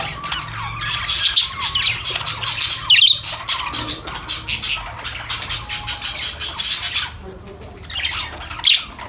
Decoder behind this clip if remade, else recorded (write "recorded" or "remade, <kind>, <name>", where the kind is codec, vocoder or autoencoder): recorded